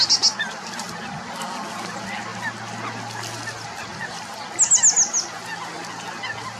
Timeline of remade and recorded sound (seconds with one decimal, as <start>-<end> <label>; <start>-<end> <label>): 0.0-6.6 recorded